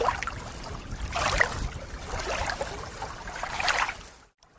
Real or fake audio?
real